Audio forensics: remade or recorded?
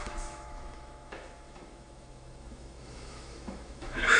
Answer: remade